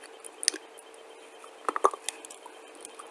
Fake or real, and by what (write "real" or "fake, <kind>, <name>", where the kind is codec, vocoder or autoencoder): real